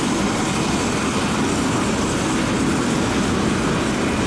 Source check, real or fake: real